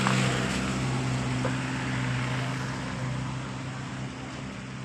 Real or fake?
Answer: real